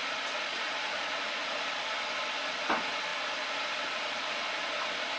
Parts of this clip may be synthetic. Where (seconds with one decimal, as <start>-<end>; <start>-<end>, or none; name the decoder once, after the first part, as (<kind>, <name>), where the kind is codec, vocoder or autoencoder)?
0.5-1.6 (vocoder, Vocos)